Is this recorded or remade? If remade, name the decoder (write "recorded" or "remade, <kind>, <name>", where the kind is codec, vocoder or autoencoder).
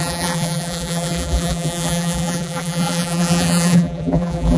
remade, vocoder, BigVGAN v2